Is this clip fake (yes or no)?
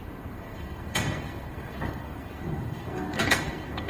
yes